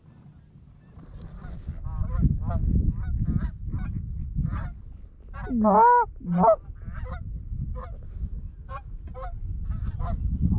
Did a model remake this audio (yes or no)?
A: no